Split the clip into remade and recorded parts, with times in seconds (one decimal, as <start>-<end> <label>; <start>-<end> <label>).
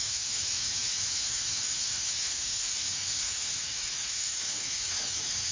0.0-5.5 remade